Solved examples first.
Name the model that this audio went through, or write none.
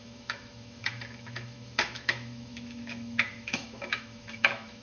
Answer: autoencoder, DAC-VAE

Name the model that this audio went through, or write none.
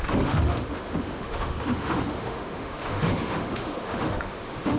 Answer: autoencoder, DAC-VAE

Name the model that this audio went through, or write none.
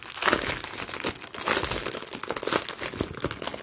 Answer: none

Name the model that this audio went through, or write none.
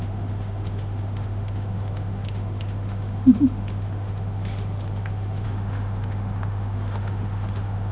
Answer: autoencoder, DAC-VAE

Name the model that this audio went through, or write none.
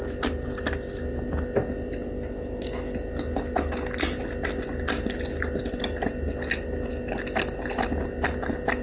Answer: none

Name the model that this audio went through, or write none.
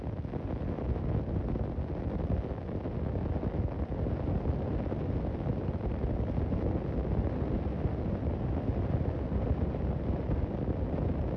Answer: none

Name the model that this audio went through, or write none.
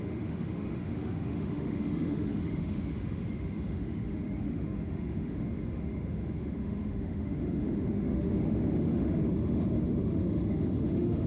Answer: autoencoder, DAC-VAE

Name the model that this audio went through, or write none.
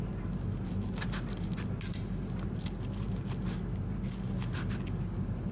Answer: none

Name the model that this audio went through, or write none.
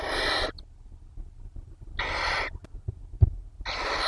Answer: none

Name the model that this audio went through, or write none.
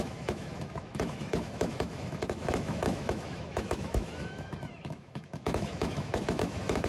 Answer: autoencoder, DAC-VAE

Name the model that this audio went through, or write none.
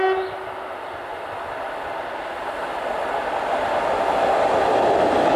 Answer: none